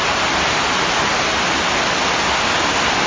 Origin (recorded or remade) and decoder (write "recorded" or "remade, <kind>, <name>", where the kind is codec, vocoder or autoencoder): recorded